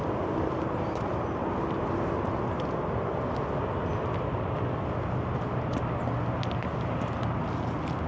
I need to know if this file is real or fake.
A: real